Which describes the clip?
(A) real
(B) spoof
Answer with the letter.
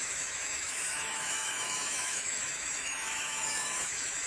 B